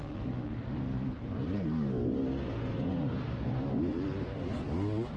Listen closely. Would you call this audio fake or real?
real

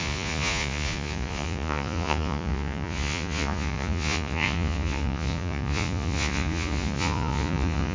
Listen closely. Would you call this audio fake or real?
fake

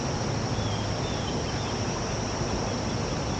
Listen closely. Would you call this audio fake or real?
real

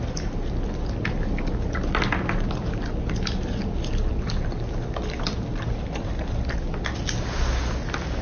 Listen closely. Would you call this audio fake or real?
real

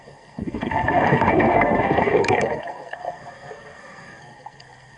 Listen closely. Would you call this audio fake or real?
fake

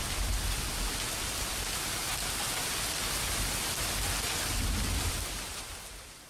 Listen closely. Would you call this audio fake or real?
real